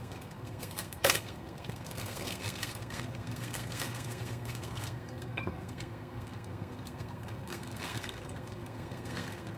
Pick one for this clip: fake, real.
fake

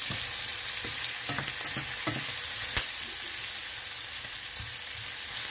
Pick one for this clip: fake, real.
real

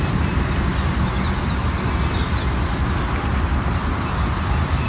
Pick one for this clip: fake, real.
real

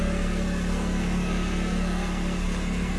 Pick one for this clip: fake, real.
fake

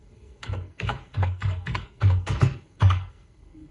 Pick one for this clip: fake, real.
fake